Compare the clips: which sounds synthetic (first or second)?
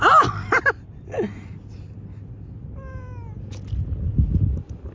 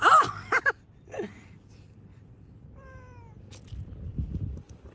second